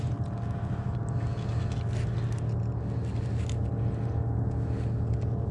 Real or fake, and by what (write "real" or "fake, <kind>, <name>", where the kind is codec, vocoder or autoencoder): real